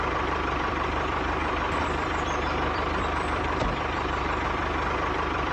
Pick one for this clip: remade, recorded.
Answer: remade